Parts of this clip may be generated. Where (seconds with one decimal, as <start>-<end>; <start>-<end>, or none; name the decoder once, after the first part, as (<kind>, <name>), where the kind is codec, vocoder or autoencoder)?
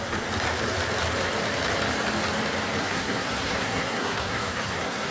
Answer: 2.8-5.1 (codec, SNAC)